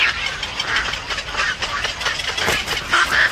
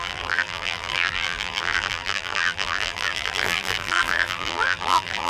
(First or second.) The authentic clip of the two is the first